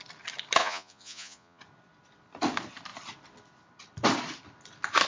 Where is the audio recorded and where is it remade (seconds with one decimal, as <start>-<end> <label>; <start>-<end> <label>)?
0.0-0.6 recorded; 0.6-1.6 remade; 1.6-5.1 recorded